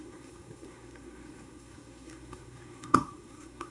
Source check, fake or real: fake